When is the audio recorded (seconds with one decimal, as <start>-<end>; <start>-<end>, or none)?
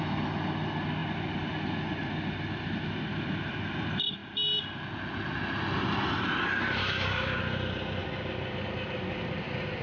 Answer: 0.0-6.8; 7.4-9.8